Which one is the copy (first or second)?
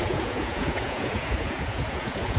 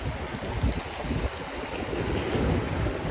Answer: first